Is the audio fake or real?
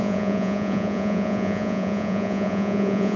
fake